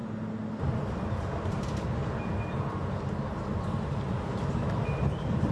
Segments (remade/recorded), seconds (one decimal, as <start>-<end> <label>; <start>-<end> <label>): 0.0-5.5 recorded